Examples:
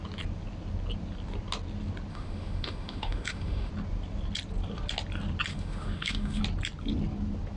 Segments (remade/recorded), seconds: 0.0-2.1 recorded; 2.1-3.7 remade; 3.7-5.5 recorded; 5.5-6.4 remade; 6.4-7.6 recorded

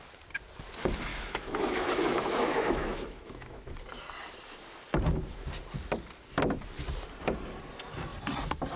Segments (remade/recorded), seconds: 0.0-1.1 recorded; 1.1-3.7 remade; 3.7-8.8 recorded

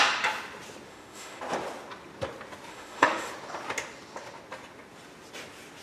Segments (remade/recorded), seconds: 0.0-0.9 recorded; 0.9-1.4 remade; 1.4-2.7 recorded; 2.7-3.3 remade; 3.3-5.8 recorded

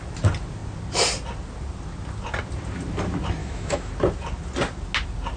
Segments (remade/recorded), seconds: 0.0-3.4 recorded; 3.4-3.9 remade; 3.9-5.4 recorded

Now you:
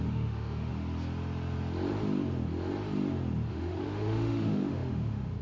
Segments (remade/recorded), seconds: 0.0-0.7 remade; 0.7-3.5 recorded; 3.5-5.4 remade